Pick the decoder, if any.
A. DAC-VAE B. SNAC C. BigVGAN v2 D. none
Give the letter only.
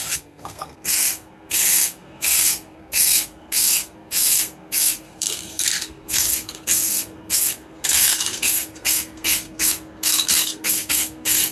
B